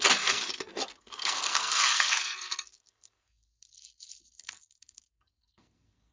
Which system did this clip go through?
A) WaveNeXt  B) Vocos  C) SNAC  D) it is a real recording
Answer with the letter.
C